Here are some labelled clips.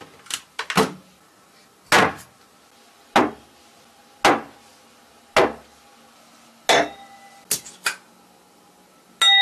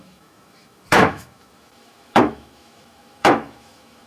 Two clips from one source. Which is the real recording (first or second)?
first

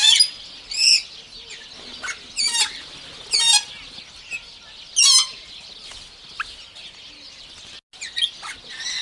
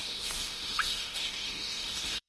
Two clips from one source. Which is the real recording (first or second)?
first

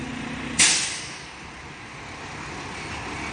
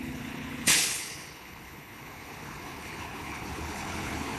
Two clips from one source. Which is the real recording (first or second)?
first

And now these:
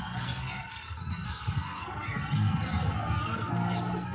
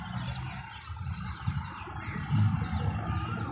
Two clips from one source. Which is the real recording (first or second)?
second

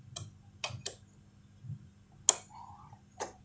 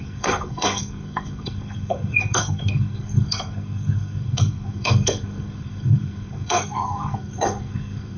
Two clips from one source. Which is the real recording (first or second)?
first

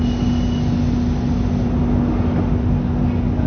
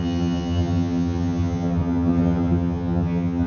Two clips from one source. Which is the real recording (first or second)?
first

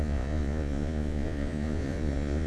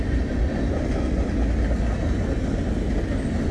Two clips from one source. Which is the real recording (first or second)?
second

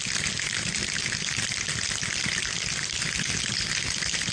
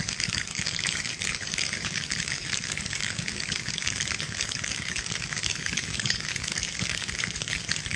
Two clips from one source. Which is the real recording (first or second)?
first